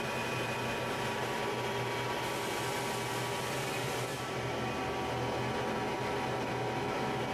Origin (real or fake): real